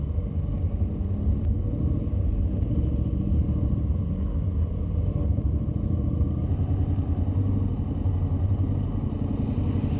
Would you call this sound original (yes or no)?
yes